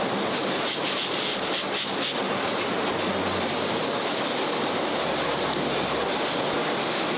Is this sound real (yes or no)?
yes